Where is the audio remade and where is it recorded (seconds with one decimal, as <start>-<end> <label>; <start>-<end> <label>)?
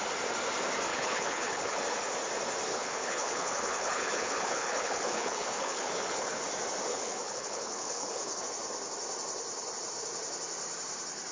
0.0-0.9 recorded; 0.9-1.8 remade; 1.8-2.7 recorded; 2.7-6.4 remade; 6.4-6.9 recorded; 6.9-8.4 remade; 8.4-11.3 recorded